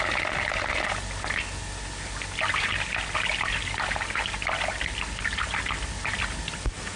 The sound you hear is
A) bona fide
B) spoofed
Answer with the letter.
A